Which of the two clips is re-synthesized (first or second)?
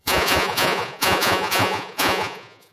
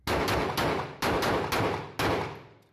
first